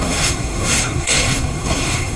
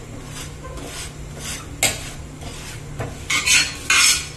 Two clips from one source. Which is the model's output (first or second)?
first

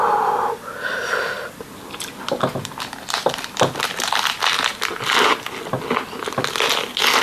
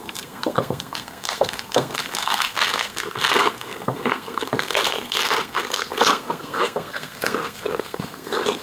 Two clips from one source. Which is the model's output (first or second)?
second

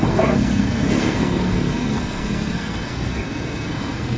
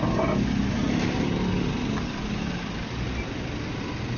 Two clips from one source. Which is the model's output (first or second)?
first